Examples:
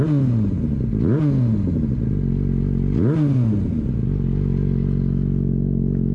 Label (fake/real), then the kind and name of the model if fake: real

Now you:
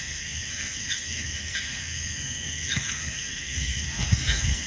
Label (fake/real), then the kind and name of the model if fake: fake, codec, SNAC